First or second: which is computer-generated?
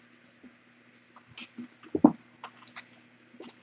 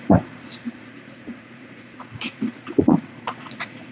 second